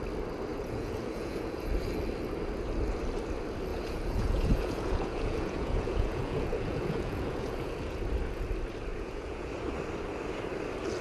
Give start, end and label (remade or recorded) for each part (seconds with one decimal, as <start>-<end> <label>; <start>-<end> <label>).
0.0-0.5 recorded; 0.5-1.7 remade; 1.7-3.7 recorded; 3.7-8.0 remade; 8.0-8.9 recorded; 8.9-9.5 remade; 9.5-11.0 recorded